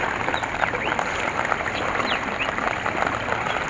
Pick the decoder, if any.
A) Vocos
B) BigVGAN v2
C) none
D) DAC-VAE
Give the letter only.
C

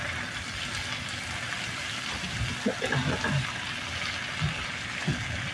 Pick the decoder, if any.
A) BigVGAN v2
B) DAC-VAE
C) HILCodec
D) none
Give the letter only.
D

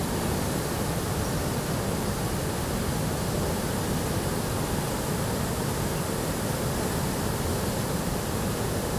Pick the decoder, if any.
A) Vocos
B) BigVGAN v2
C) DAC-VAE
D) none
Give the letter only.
D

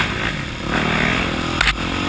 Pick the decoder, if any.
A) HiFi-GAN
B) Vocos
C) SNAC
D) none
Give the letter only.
D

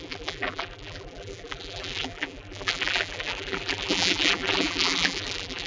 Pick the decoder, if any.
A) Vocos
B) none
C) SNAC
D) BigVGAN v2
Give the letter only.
D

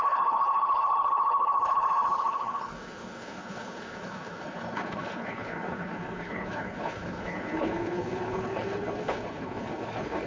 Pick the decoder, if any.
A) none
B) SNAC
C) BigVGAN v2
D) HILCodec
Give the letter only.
D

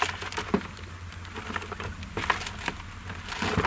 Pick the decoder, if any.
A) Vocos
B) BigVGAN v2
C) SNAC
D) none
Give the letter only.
D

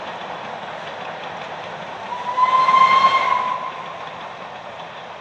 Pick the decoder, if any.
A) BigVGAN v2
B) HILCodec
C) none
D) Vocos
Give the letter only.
C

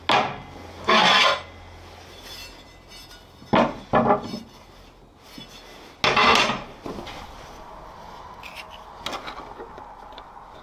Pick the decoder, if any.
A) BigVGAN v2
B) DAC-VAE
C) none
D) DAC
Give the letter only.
C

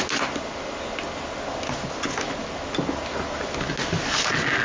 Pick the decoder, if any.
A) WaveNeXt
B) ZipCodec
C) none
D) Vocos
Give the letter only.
C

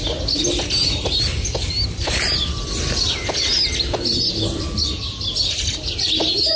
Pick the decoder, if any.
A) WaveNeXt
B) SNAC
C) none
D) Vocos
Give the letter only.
C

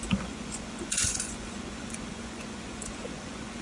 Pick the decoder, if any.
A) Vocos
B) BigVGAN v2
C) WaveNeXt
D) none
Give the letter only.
A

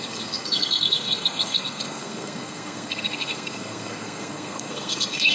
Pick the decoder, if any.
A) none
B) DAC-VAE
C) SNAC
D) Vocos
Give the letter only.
C